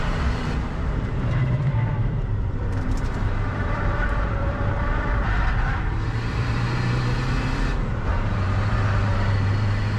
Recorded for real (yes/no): no